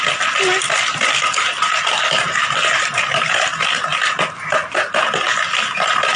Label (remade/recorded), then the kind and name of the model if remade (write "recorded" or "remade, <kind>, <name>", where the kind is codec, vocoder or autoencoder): recorded